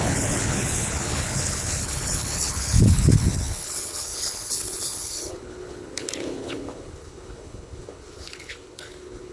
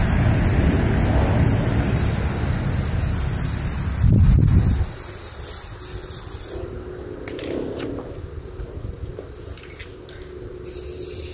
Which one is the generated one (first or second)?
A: first